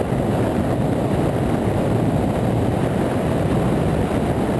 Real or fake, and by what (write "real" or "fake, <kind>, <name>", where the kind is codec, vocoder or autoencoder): fake, vocoder, BigVGAN v2